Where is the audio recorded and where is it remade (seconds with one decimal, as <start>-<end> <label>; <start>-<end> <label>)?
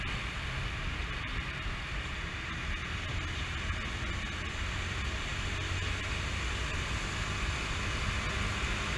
0.0-1.0 recorded; 1.0-1.9 remade; 1.9-9.0 recorded